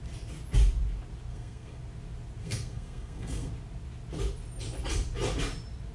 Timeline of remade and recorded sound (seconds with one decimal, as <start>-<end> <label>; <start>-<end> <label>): 0.0-1.3 recorded; 1.3-1.8 remade; 1.8-2.4 recorded; 2.4-3.5 remade; 3.5-5.9 recorded